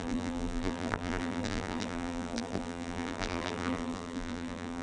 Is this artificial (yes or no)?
yes